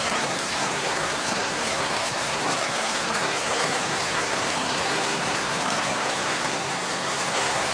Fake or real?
fake